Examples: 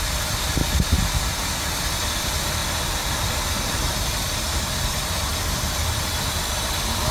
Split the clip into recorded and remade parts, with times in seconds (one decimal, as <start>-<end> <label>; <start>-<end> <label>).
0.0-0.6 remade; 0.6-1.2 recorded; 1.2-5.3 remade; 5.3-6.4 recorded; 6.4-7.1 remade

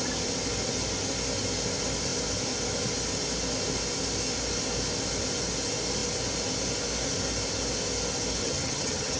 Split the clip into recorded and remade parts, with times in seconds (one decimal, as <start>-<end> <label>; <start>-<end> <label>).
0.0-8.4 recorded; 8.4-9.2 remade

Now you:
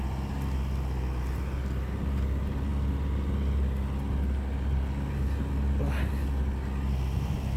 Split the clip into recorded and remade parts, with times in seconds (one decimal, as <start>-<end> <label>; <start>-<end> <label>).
0.0-7.6 recorded

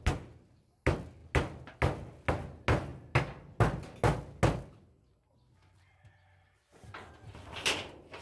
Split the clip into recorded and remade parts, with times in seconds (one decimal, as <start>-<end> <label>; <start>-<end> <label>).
0.0-8.2 recorded

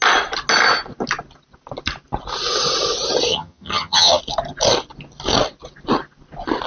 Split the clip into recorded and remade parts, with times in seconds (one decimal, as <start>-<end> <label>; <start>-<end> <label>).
0.0-3.3 recorded; 3.3-4.2 remade; 4.2-6.7 recorded